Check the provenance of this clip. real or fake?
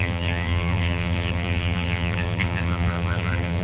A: fake